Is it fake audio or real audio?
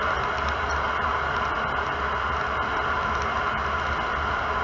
real